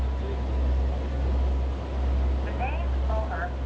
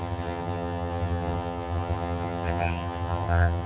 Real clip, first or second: first